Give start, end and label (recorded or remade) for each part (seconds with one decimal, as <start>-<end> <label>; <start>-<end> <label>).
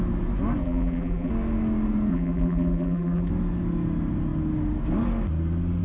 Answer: 0.0-0.6 recorded; 0.6-1.3 remade; 1.3-2.1 recorded; 2.1-3.3 remade; 3.3-5.8 recorded